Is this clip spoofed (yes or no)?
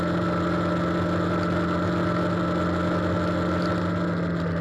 no